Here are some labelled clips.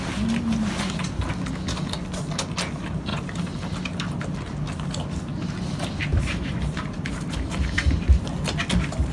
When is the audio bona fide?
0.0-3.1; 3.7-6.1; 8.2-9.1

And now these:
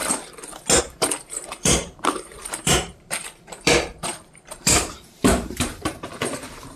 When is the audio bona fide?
0.0-0.8

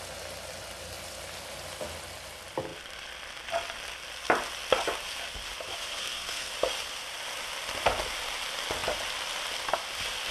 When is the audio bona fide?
0.0-6.0; 6.5-10.3

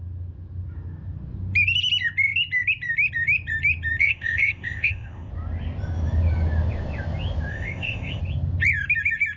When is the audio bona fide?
0.0-4.0; 5.3-7.5; 8.2-9.4

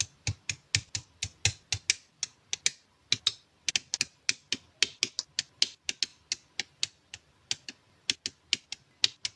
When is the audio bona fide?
0.0-9.4

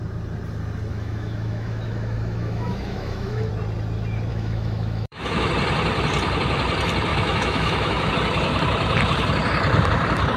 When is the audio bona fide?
0.0-0.9; 3.5-4.3; 5.5-7.1; 8.1-10.4

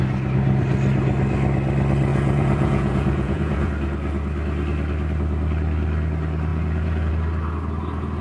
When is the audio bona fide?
0.0-2.1; 3.7-6.5; 7.1-8.2

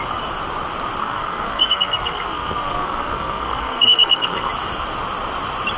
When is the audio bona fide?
0.0-1.0; 4.5-5.8